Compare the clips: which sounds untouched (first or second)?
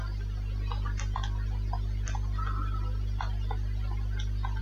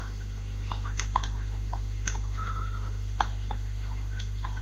first